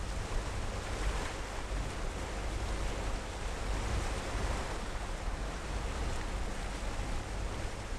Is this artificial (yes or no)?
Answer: no